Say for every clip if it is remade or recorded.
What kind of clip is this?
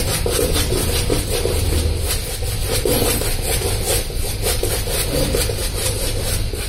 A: recorded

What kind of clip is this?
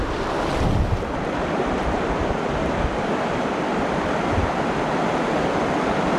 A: recorded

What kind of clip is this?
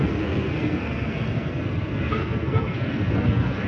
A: remade